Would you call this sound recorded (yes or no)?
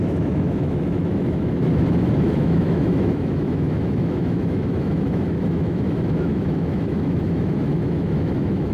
no